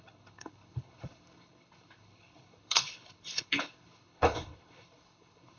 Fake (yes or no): yes